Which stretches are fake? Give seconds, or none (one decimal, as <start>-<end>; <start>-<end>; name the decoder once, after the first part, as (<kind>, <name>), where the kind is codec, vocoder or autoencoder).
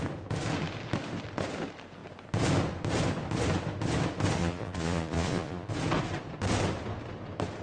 4.4-5.7 (vocoder, Vocos)